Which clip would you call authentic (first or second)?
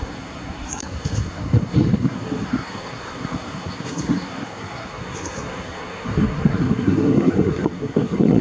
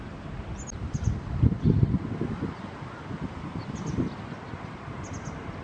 second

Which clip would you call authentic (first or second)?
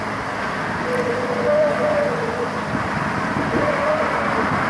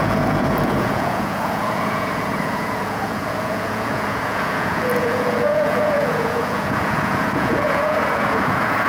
first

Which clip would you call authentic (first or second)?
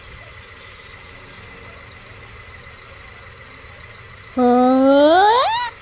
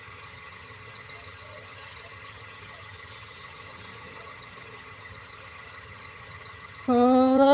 first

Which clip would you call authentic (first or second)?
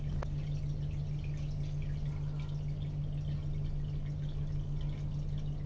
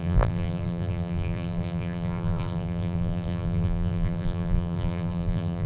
first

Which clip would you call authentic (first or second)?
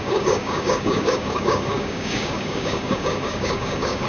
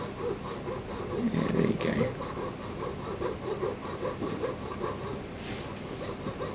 second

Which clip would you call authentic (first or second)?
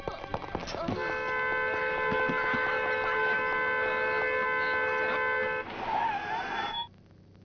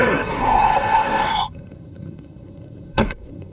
first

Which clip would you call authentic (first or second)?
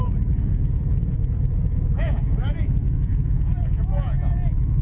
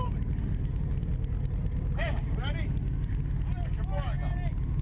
second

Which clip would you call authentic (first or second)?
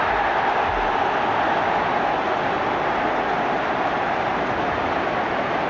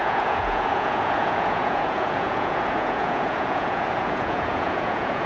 first